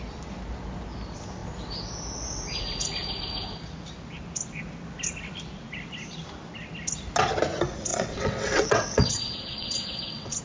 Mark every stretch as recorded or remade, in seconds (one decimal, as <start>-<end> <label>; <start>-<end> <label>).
0.0-7.9 recorded; 7.9-10.4 remade